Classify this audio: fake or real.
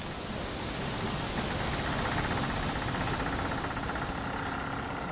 real